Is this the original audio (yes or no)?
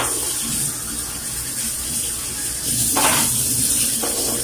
yes